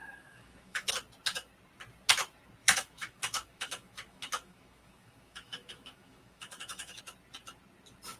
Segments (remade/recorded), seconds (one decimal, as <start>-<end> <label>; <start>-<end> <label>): 0.0-0.9 remade; 0.9-2.6 recorded; 2.6-7.0 remade; 7.0-8.2 recorded

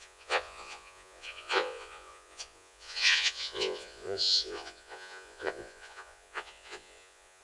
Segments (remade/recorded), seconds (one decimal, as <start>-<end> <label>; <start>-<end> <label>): 0.0-7.4 remade